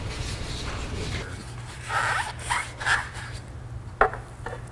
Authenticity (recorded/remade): recorded